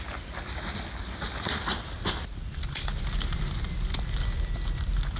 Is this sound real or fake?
real